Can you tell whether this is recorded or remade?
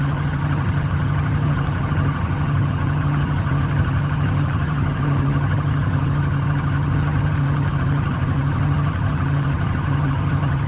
remade